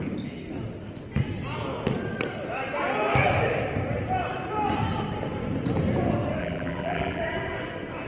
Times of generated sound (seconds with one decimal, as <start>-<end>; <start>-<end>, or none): 6.4-7.2